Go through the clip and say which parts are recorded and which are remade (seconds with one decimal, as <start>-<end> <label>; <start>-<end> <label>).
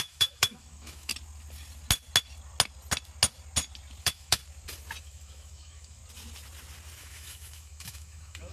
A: 0.0-1.1 remade; 1.1-4.0 recorded; 4.0-4.4 remade; 4.4-5.0 recorded; 5.0-6.0 remade; 6.0-7.0 recorded; 7.0-8.5 remade